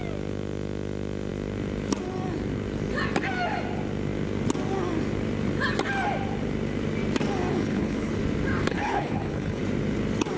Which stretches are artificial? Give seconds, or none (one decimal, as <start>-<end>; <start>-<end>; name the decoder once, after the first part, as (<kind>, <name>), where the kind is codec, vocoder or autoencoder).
7.5-8.1 (codec, HILCodec); 8.7-9.6